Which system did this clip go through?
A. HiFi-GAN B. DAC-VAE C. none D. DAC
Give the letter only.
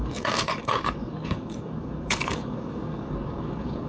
D